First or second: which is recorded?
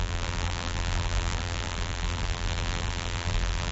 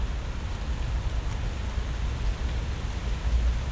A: second